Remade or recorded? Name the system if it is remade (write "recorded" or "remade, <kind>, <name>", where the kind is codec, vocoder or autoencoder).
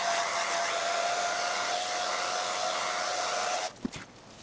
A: recorded